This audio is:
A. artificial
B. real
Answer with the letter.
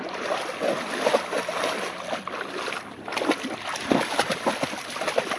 B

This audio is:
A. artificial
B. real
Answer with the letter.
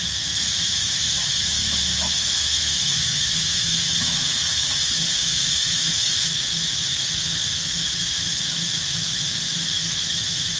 A